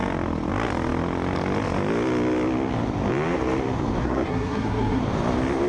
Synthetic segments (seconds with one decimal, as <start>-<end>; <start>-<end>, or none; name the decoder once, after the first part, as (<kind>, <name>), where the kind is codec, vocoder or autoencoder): 4.0-5.0 (codec, SNAC)